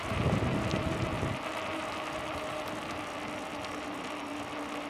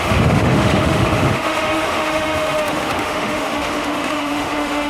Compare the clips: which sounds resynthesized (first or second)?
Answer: second